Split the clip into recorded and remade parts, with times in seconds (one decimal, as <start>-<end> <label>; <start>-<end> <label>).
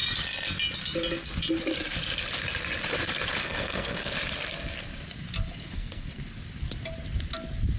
0.0-3.4 recorded; 3.4-4.1 remade; 4.1-5.6 recorded; 5.6-6.2 remade; 6.2-7.8 recorded